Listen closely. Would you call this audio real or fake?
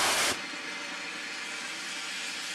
real